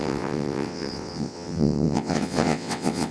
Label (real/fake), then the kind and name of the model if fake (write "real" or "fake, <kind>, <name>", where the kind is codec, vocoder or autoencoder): fake, vocoder, WaveNeXt